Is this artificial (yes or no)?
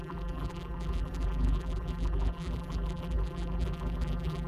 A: yes